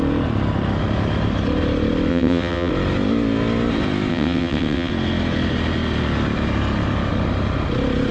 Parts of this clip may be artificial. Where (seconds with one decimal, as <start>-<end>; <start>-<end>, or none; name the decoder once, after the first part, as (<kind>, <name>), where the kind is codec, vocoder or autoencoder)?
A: 2.1-2.7 (vocoder, WaveNeXt); 4.1-4.9